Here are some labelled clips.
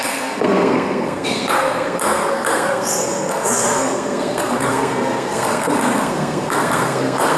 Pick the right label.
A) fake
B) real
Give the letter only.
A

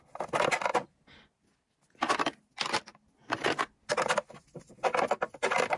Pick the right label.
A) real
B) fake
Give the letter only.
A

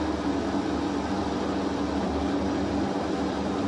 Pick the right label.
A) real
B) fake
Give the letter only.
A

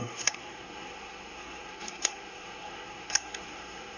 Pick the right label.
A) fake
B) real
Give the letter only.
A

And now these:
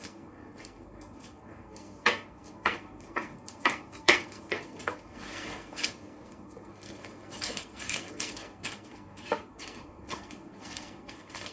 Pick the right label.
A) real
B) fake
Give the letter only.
B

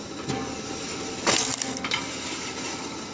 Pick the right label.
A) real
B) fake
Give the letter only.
A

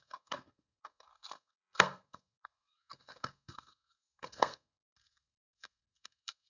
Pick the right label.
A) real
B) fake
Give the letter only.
B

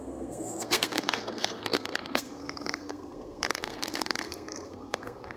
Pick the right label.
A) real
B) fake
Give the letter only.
B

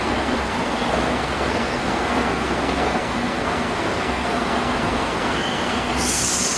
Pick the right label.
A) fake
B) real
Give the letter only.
A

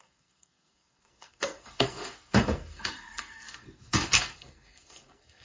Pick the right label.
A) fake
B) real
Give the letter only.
A